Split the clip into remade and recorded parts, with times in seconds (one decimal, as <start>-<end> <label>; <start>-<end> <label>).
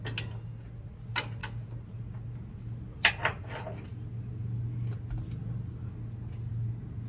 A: 0.0-7.1 recorded